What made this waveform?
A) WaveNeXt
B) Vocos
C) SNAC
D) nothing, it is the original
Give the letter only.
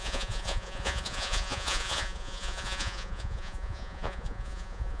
B